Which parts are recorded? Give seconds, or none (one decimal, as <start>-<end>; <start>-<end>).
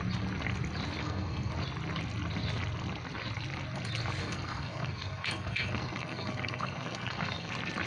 0.0-1.0; 1.5-4.2; 7.5-7.9